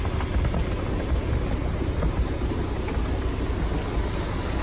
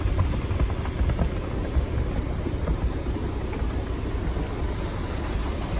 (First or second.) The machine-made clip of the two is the second